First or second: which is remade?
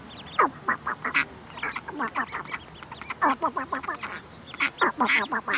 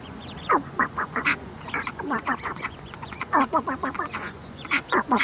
second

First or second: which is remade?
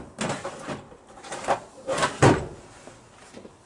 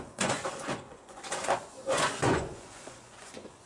second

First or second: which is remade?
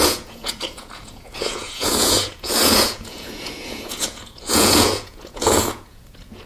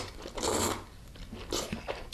first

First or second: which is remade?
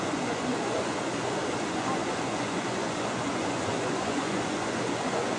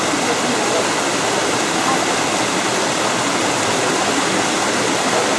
first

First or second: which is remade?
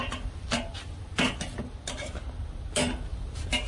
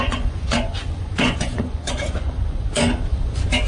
second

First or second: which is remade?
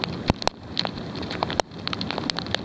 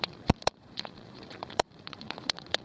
second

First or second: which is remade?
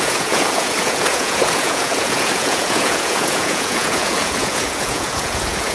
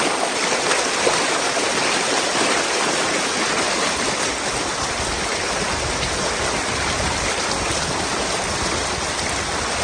first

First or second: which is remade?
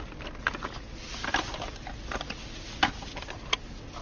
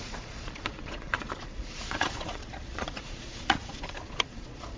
second